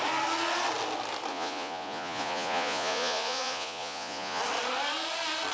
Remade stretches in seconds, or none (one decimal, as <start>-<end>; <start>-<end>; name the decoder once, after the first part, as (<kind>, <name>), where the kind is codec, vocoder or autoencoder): 1.3-4.4 (vocoder, Vocos)